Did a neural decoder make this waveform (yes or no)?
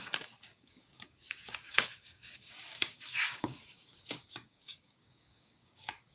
yes